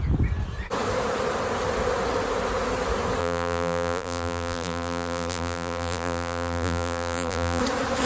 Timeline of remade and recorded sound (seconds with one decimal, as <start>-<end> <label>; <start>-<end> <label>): 0.0-3.2 recorded; 3.2-7.6 remade; 7.6-8.1 recorded